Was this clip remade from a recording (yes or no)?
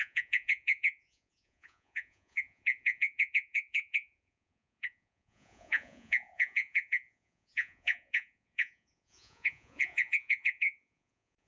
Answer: yes